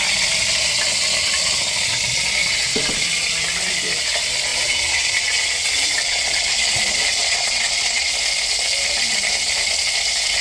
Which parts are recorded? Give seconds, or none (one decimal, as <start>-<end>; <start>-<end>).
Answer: 0.0-4.5; 8.1-10.4